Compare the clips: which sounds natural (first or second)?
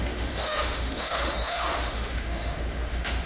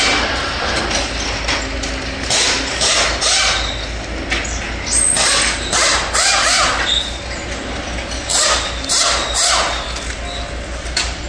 second